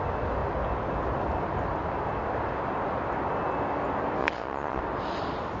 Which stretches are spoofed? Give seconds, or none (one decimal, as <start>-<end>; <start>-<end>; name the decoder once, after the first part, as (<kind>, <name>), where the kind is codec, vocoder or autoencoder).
4.2-4.8 (vocoder, Vocos)